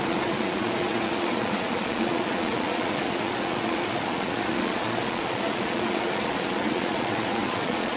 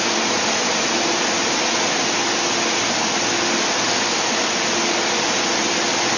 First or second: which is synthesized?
first